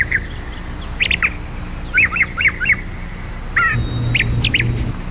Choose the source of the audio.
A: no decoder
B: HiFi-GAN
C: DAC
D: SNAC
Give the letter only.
A